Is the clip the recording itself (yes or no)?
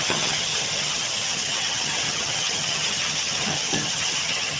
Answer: no